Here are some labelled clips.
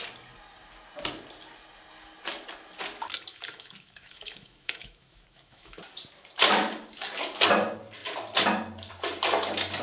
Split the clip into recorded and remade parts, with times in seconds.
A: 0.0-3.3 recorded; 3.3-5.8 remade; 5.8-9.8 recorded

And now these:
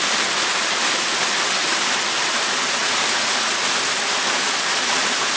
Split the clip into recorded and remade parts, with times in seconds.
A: 0.0-2.8 recorded; 2.8-3.5 remade; 3.5-5.4 recorded

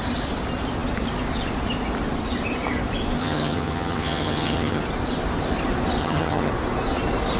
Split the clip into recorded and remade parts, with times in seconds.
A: 0.0-3.2 recorded; 3.2-4.8 remade; 4.8-6.0 recorded; 6.0-6.5 remade; 6.5-7.4 recorded

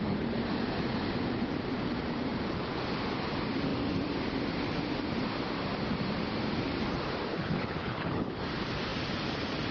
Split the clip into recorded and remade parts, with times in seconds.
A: 0.0-7.3 recorded; 7.3-8.4 remade; 8.4-9.7 recorded

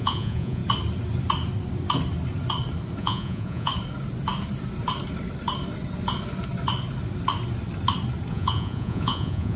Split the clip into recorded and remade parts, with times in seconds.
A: 0.0-0.6 remade; 0.6-3.0 recorded; 3.0-3.7 remade; 3.7-8.3 recorded; 8.3-9.6 remade

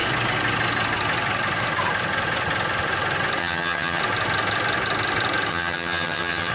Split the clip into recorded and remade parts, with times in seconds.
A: 0.0-3.4 recorded; 3.4-4.0 remade; 4.0-5.5 recorded; 5.5-6.5 remade

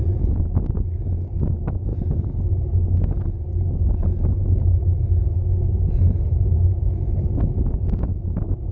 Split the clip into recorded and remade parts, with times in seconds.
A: 0.0-8.7 recorded